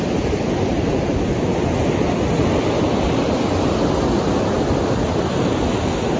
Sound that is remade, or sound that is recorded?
recorded